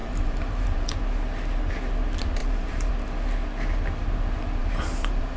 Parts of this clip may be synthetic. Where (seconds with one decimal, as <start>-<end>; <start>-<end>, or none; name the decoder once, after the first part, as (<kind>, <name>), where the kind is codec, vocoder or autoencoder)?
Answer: 0.0-1.0 (vocoder, BigVGAN v2); 2.4-2.9; 4.6-5.4